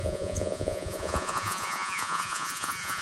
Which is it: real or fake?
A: fake